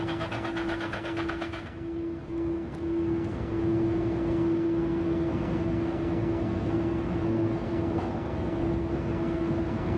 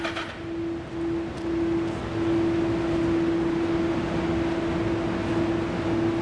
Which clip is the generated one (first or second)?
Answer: first